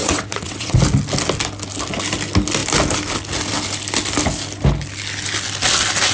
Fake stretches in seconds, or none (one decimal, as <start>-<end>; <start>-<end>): 0.0-0.8